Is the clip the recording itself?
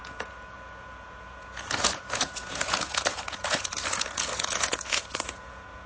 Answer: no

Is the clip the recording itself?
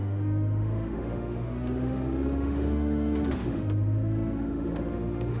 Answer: no